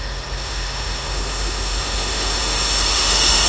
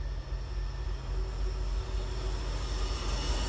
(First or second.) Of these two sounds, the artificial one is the first